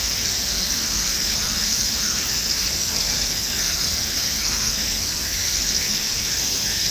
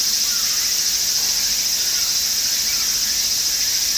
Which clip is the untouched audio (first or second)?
second